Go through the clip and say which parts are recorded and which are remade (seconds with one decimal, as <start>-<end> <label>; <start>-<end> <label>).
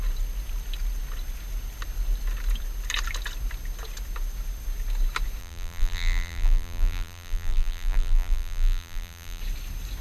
0.0-5.4 recorded; 5.4-9.4 remade; 9.4-10.0 recorded